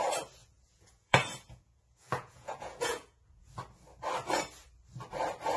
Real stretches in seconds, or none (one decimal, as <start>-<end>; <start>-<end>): 0.0-0.4; 3.5-5.6